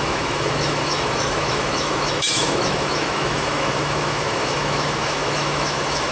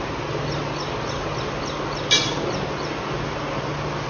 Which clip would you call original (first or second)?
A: second